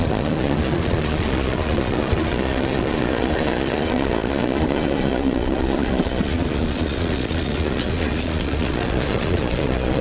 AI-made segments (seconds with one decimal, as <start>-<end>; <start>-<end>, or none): 0.0-10.0